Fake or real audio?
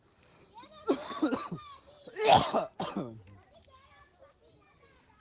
real